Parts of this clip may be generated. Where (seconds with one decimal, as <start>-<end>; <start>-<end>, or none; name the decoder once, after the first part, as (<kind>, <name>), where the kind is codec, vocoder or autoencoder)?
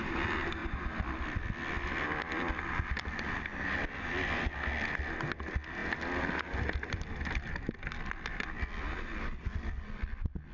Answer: none